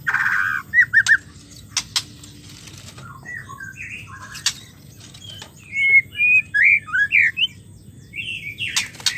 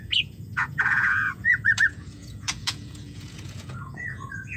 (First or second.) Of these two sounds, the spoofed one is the second